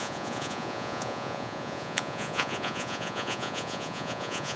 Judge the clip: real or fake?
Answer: fake